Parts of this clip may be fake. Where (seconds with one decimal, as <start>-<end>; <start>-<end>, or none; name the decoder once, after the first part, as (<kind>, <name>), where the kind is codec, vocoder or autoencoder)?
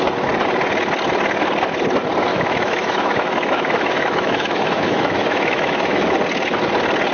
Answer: 2.3-6.1 (autoencoder, DAC-VAE)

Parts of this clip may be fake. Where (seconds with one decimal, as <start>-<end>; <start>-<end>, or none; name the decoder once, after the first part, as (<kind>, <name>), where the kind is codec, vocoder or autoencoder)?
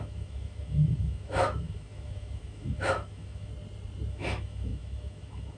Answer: 0.0-3.5 (autoencoder, DAC-VAE); 4.1-5.6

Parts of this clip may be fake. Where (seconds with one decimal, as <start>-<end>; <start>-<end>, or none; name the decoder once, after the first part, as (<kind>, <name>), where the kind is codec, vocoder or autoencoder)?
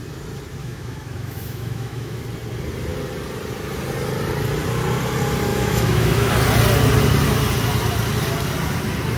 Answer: 0.6-2.2 (autoencoder, DAC-VAE); 5.5-6.3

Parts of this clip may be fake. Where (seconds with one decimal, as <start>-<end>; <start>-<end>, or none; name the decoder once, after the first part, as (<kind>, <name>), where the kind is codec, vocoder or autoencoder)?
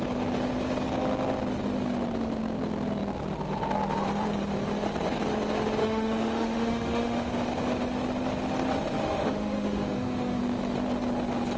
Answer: 5.8-7.3 (autoencoder, DAC-VAE); 9.0-10.4